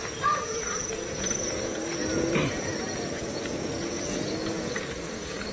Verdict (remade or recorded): remade